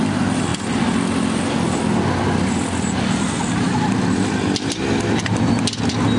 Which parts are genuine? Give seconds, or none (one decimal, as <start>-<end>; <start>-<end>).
0.0-6.2